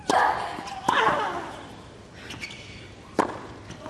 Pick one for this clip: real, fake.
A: real